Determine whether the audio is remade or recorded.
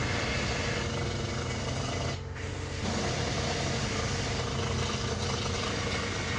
recorded